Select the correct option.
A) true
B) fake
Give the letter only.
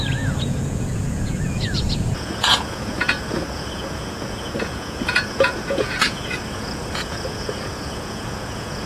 B